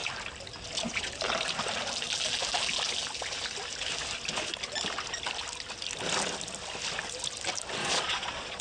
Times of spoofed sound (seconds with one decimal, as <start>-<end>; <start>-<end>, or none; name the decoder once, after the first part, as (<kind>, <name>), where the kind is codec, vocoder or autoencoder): 7.8-8.6 (vocoder, Vocos)